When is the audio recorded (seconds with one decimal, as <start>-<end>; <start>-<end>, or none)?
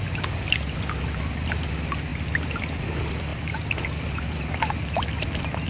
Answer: 0.0-5.7